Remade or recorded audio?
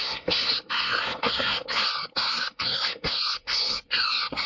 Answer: remade